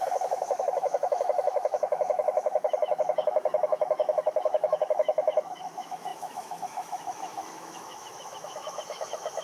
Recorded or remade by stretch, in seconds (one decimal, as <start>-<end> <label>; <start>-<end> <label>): 0.0-9.4 remade